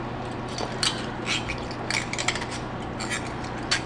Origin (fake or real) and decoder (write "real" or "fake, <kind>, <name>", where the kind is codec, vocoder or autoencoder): real